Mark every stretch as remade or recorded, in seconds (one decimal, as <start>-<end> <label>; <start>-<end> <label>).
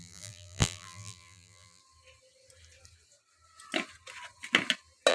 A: 0.0-1.8 remade; 1.8-5.1 recorded